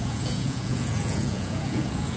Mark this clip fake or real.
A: fake